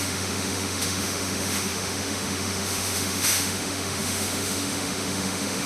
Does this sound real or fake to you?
fake